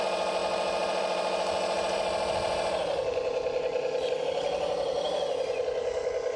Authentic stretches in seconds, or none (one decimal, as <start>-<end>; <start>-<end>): 0.0-6.4